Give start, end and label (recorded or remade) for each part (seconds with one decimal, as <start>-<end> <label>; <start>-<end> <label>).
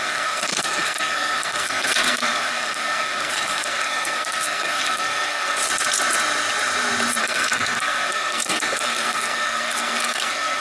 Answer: 0.0-5.6 remade; 5.6-7.2 recorded; 7.2-10.6 remade